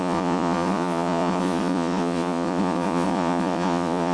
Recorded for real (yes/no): no